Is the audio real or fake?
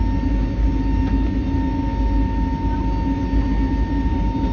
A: real